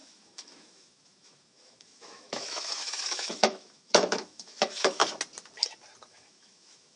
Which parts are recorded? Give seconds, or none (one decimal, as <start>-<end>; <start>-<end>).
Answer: 5.0-6.1